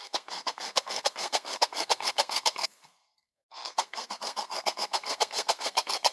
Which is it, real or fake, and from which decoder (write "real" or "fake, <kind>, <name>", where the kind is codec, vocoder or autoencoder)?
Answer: fake, codec, SNAC